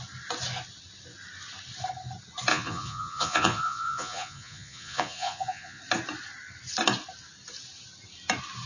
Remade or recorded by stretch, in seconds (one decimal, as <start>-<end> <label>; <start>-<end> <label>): 0.0-2.5 recorded; 2.5-5.8 remade; 5.8-8.7 recorded